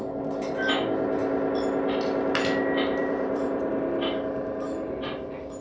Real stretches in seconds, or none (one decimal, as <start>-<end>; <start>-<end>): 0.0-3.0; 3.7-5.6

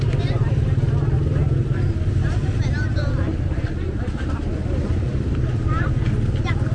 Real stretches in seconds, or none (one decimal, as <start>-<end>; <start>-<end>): 0.0-4.6; 5.8-6.7

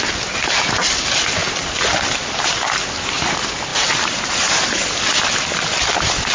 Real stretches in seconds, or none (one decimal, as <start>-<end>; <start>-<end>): 0.0-3.7; 5.0-6.3

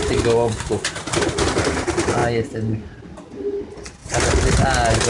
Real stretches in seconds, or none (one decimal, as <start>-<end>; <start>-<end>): 0.0-4.0; 4.6-5.1

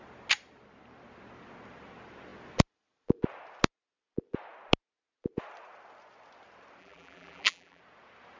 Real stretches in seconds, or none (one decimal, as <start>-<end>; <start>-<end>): 0.0-6.8; 7.8-8.4

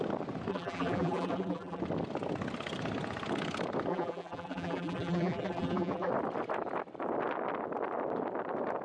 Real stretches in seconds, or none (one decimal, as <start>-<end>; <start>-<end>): 0.0-0.5; 1.8-3.9; 6.1-8.8